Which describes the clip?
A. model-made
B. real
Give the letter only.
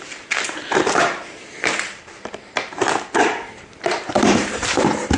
A